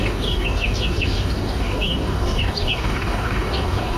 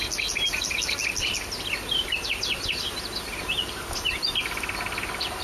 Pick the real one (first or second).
second